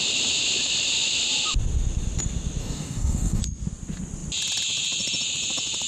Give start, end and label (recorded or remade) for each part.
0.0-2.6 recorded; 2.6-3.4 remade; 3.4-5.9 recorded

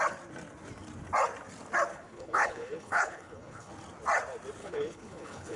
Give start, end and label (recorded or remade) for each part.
0.0-1.9 recorded; 1.9-3.7 remade; 3.7-4.6 recorded; 4.6-5.6 remade

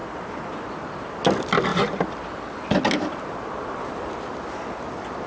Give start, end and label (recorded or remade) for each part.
0.0-5.3 recorded

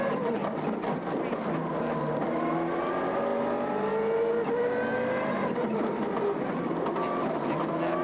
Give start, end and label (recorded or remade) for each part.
0.0-8.0 recorded